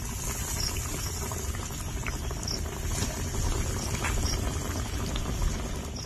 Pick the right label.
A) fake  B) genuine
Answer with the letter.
B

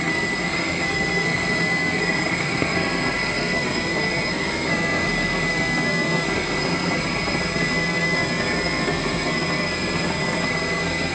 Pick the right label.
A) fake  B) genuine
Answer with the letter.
A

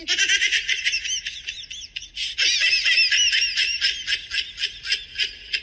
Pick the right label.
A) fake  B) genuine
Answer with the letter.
B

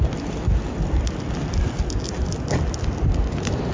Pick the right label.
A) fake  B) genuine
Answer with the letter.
B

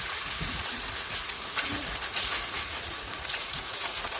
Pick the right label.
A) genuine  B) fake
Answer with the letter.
B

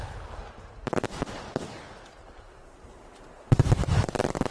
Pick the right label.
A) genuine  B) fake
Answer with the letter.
A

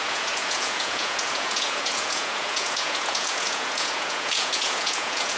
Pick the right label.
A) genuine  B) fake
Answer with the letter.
B